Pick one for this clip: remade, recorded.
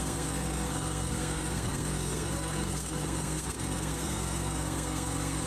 remade